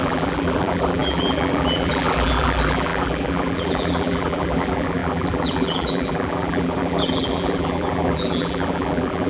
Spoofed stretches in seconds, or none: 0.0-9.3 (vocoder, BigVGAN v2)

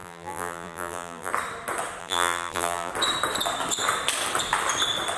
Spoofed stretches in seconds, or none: 0.0-1.3 (vocoder, BigVGAN v2); 2.0-2.9

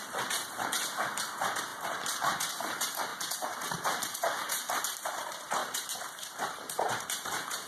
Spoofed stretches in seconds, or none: 0.0-7.7 (vocoder, BigVGAN v2)